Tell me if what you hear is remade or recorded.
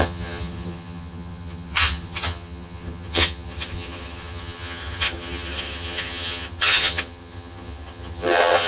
remade